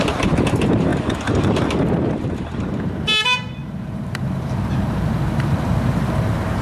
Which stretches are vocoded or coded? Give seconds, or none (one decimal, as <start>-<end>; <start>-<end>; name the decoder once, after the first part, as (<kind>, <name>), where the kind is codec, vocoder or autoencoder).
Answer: 0.0-0.9 (vocoder, BigVGAN v2); 1.9-6.6